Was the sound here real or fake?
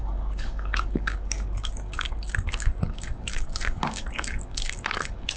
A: fake